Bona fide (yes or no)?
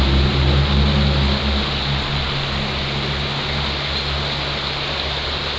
yes